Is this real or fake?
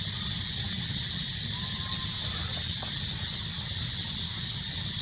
real